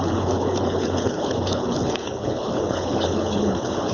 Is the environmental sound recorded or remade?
remade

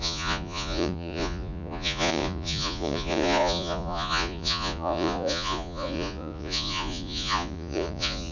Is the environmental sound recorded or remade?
remade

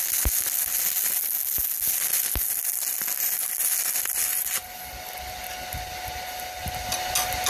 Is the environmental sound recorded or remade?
recorded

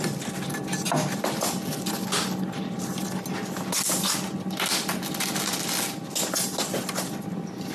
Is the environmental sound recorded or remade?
recorded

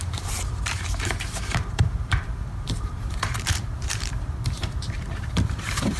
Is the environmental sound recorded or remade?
remade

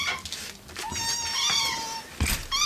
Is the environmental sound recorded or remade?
recorded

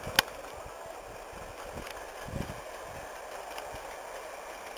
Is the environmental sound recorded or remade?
recorded